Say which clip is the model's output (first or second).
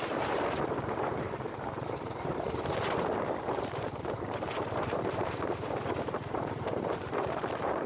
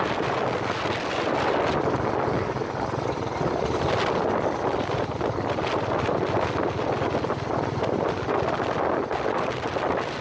first